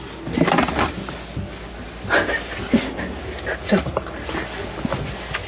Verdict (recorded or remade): recorded